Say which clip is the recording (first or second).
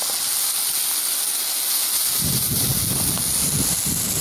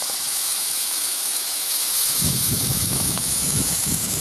first